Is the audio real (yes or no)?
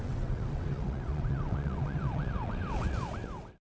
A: no